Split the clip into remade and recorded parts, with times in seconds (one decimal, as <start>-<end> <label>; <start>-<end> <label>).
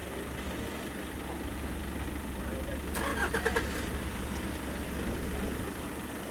0.0-6.3 recorded